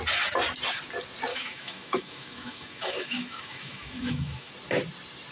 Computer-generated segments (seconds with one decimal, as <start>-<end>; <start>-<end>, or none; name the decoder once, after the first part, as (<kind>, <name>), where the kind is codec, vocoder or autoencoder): 1.3-4.5 (autoencoder, DAC-VAE)